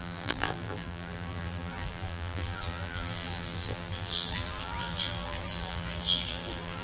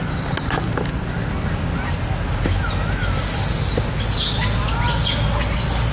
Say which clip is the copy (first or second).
first